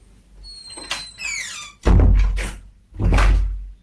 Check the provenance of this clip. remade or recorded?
recorded